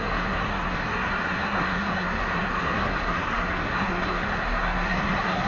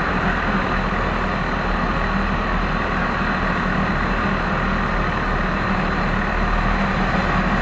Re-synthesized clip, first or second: first